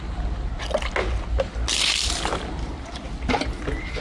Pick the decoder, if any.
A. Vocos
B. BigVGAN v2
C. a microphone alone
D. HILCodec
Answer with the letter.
C